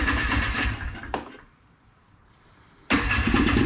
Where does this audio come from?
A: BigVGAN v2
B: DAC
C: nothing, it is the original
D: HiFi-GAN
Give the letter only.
A